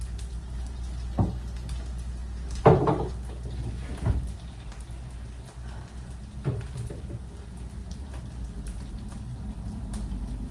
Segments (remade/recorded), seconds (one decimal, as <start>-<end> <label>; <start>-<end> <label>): 0.0-10.5 recorded